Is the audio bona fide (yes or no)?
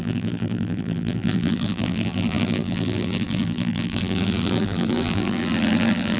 no